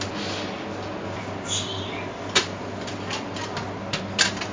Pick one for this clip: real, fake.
real